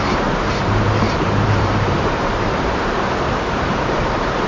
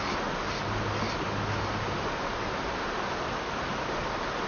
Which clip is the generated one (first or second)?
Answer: first